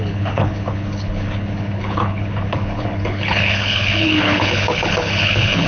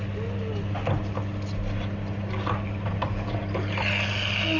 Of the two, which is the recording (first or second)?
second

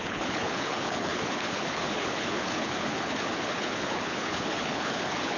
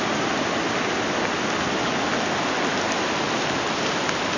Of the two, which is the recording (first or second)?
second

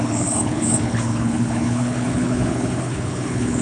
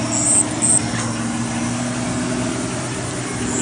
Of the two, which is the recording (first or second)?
second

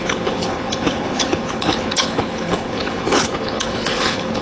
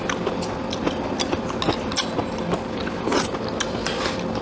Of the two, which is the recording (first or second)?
second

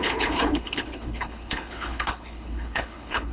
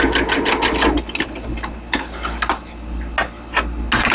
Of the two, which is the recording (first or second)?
second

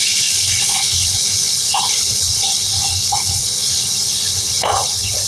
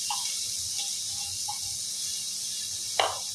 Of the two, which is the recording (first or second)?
second